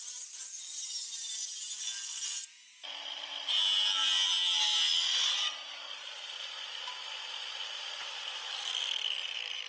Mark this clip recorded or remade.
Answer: recorded